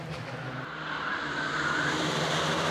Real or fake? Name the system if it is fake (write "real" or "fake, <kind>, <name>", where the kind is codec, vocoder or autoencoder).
fake, vocoder, BigVGAN v2